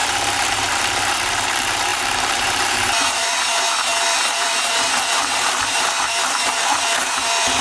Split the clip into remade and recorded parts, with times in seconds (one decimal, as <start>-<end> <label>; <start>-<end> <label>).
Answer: 0.0-7.6 remade